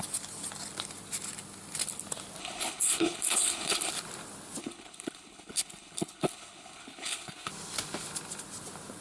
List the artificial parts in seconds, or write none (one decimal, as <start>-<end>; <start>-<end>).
2.4-3.9; 4.6-7.5